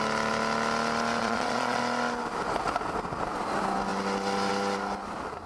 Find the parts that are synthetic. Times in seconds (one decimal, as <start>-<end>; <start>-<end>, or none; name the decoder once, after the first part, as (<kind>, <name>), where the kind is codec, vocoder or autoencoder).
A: 1.2-1.8 (vocoder, Vocos)